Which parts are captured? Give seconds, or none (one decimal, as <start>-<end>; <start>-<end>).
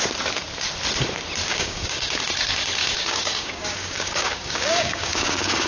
0.0-1.4; 2.2-2.8